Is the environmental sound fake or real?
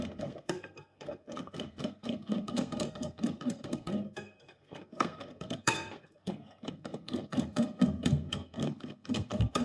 fake